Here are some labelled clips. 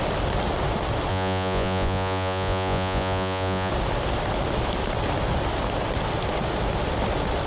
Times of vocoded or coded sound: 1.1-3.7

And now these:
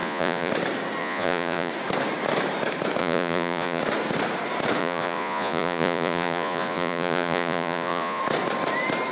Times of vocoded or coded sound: 0.0-0.5; 1.0-1.7; 3.0-3.8; 4.8-8.2